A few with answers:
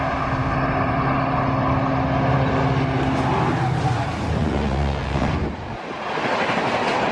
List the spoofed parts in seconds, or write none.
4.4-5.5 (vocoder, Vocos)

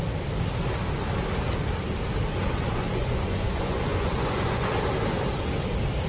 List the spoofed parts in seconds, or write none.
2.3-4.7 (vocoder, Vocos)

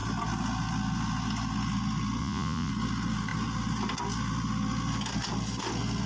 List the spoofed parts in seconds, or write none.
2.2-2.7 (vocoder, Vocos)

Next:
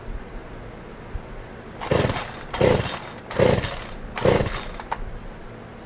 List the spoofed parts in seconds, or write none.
none

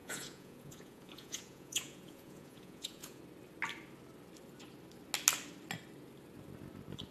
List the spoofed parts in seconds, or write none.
0.0-3.2 (vocoder, Vocos)